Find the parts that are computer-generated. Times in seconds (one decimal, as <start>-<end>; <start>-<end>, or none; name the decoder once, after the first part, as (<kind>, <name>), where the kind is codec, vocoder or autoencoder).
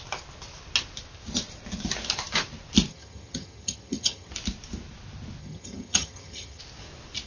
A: 2.9-4.3 (vocoder, HiFi-GAN); 5.4-6.6